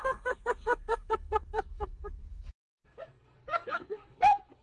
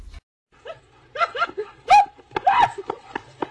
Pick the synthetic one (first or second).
first